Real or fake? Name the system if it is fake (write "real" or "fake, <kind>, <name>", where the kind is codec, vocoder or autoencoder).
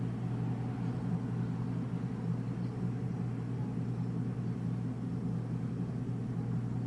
real